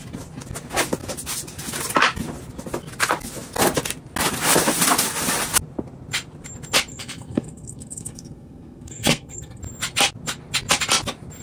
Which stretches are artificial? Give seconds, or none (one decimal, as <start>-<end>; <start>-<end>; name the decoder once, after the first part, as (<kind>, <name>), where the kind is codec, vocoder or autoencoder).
6.9-9.6 (codec, SNAC)